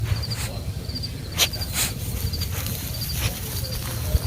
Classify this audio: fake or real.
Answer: real